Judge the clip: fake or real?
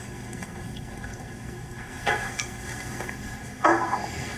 fake